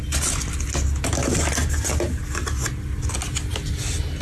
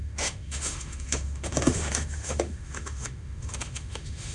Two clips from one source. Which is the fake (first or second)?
second